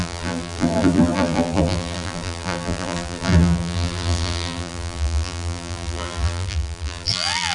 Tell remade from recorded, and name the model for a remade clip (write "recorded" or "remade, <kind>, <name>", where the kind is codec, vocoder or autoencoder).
remade, vocoder, BigVGAN v2